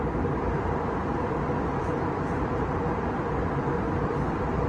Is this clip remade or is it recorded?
remade